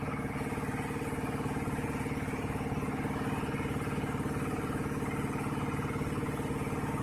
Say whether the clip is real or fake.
real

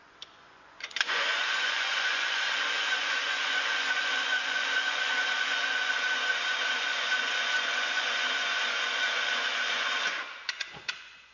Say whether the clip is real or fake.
fake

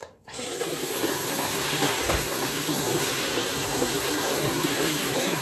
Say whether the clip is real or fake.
fake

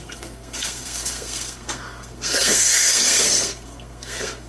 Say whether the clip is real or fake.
fake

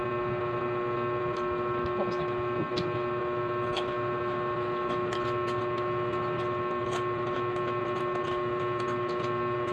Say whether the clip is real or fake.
real